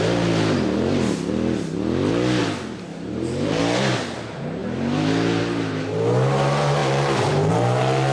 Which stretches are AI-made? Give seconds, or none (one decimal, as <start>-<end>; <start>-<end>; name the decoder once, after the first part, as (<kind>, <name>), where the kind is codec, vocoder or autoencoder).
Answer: 2.9-3.6 (vocoder, BigVGAN v2)